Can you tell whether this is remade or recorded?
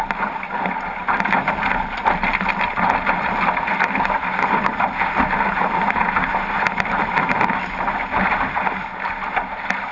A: recorded